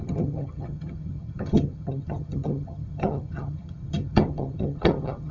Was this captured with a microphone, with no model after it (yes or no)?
no